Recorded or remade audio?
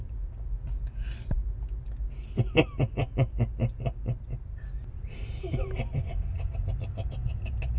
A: recorded